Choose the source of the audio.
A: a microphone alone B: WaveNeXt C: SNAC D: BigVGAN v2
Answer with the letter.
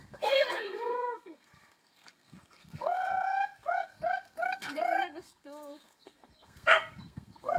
C